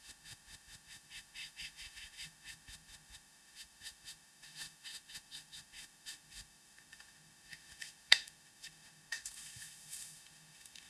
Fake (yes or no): yes